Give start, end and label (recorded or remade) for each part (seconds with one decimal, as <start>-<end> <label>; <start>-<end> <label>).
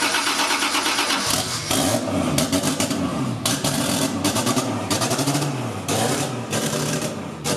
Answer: 0.0-3.1 recorded; 3.1-6.9 remade; 6.9-7.6 recorded